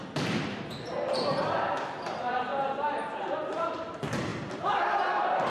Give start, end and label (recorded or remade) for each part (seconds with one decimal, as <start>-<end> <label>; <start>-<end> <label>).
0.0-2.5 remade; 2.5-3.5 recorded; 3.5-5.5 remade